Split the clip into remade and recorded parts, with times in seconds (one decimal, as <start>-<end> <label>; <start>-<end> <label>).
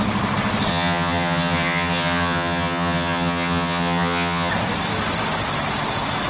0.0-0.7 recorded; 0.7-4.5 remade; 4.5-6.3 recorded